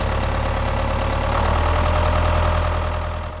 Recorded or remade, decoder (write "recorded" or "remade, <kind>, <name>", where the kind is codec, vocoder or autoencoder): recorded